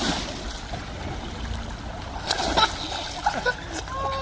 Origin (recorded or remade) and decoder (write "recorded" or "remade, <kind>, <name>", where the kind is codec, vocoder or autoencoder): recorded